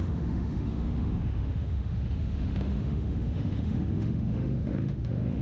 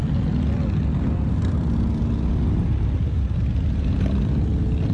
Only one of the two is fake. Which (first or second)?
first